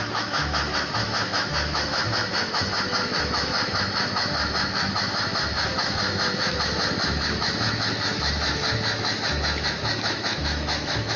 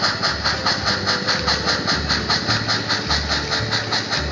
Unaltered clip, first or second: second